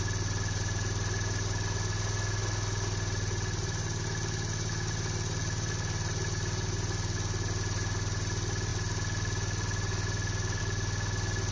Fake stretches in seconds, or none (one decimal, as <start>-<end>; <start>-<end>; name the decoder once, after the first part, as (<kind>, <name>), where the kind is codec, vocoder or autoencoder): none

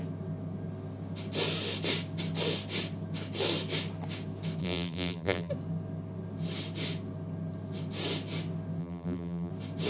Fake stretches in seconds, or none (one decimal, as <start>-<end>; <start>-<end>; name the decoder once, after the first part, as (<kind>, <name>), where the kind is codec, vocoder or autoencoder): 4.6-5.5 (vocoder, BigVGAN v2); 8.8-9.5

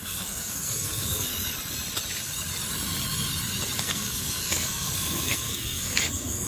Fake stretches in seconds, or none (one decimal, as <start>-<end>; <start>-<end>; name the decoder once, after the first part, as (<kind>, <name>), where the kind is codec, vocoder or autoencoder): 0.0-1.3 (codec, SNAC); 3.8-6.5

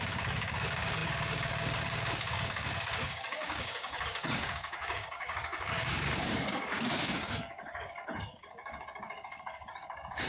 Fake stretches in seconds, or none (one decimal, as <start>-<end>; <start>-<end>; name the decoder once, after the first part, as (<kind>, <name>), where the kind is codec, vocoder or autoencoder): 0.0-10.3 (codec, DAC)

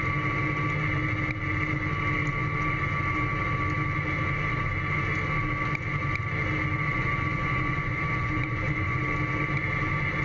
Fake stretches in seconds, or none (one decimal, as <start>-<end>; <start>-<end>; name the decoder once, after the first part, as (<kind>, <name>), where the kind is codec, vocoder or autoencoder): 6.9-9.0 (vocoder, Vocos)

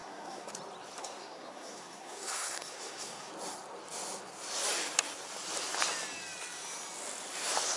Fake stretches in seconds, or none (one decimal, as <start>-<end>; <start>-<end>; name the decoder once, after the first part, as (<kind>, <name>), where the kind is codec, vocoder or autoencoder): 0.0-0.5 (codec, SNAC); 1.0-3.3